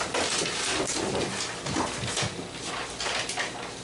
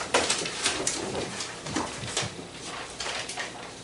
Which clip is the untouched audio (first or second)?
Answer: first